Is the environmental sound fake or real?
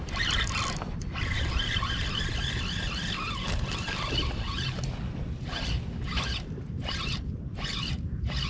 real